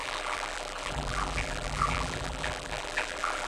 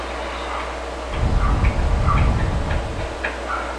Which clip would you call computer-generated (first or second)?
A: first